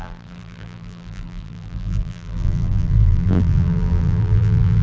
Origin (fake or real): fake